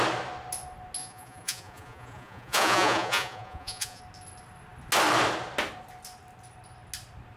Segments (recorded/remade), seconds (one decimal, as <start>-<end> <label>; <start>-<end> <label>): 0.0-1.0 recorded; 1.0-4.0 remade; 4.0-7.4 recorded